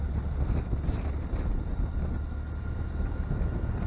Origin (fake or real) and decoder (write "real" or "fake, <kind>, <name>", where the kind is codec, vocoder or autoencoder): real